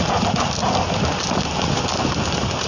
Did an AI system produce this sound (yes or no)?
no